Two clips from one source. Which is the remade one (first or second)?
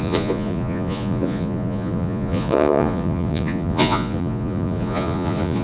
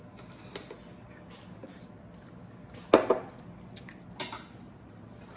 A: first